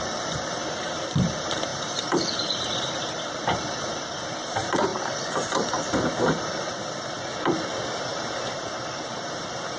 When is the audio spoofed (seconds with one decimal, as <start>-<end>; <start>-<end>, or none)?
0.0-7.3; 8.0-9.8

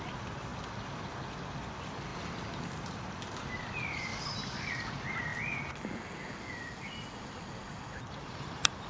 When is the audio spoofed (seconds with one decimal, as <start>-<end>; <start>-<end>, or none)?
0.0-0.5; 1.4-2.1; 3.4-4.1; 4.7-5.3; 7.2-8.9

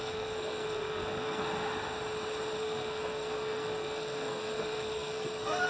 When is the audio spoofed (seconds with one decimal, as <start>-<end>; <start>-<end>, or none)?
0.0-1.4; 2.6-5.7